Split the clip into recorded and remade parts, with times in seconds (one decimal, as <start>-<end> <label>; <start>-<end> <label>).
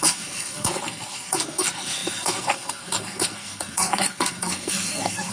0.0-5.3 remade